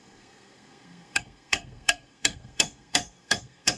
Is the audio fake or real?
fake